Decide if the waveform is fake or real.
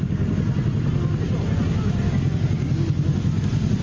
real